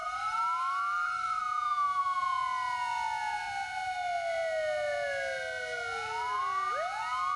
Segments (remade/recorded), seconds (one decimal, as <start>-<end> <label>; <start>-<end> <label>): 0.0-1.4 remade; 1.4-7.4 recorded